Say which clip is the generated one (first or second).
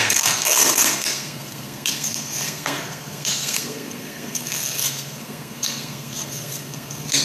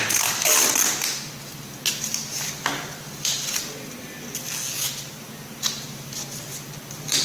first